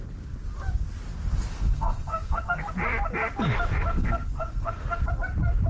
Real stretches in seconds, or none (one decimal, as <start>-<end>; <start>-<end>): 0.0-1.5; 2.7-3.9; 5.0-5.7